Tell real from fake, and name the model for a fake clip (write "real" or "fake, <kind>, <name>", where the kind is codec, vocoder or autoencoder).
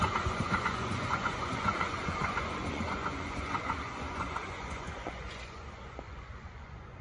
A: fake, vocoder, Vocos